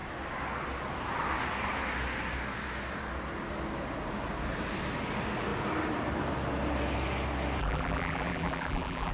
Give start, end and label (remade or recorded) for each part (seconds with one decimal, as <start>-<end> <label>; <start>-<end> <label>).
0.0-7.6 recorded; 7.6-9.1 remade